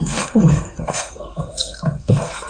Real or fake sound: fake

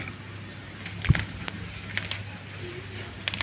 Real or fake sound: real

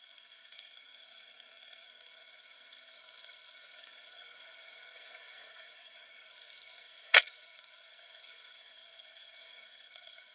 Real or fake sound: fake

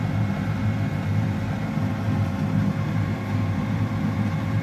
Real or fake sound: real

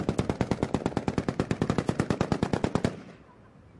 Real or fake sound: real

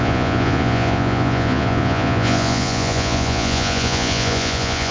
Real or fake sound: fake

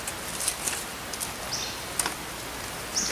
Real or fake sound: real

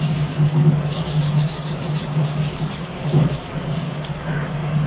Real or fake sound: fake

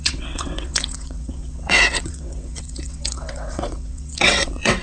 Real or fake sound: fake